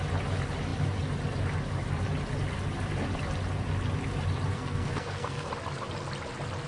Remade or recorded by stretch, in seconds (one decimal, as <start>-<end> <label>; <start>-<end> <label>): 0.0-4.5 recorded; 4.5-5.5 remade; 5.5-6.7 recorded